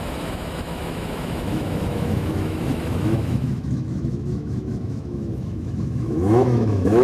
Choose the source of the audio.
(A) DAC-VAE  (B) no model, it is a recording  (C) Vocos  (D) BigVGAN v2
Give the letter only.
A